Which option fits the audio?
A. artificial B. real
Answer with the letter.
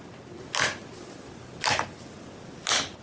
B